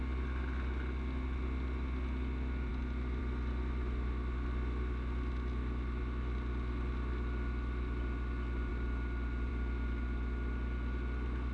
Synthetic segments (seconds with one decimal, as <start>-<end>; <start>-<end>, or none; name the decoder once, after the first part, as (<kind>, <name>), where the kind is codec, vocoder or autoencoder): none

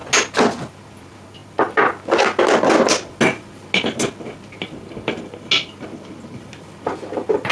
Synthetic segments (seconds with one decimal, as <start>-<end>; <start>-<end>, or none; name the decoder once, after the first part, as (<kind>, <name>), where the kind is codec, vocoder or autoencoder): none

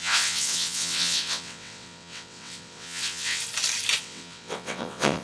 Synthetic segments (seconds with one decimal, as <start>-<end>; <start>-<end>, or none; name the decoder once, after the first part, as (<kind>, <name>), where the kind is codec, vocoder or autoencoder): 0.0-3.4 (vocoder, WaveNeXt); 4.0-5.2

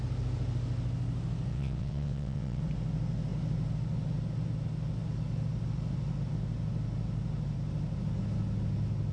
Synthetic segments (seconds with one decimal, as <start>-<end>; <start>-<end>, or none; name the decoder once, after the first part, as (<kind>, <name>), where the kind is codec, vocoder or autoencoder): 1.5-2.6 (vocoder, WaveNeXt)

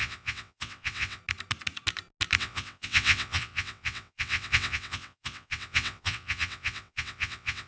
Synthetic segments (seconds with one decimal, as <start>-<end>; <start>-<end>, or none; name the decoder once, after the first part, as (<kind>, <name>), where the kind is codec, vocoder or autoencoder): 0.0-1.2 (vocoder, WaveNeXt); 2.4-7.7

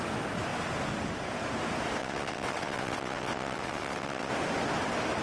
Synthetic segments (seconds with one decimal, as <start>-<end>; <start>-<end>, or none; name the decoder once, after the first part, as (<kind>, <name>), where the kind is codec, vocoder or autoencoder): 2.0-4.3 (vocoder, WaveNeXt)

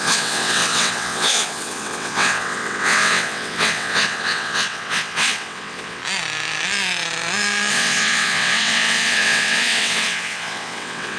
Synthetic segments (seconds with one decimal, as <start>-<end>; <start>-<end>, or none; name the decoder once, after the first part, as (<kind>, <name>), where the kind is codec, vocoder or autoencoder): 0.0-6.0 (vocoder, WaveNeXt); 7.7-11.2